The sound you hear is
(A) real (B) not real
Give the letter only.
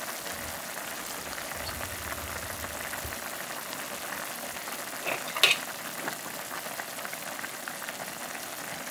A